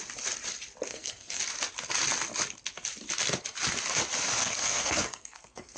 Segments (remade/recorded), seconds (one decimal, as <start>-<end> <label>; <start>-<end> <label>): 0.0-0.9 recorded; 0.9-1.4 remade; 1.4-4.4 recorded; 4.4-5.8 remade